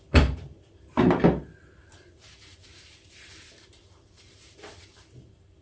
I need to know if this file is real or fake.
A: fake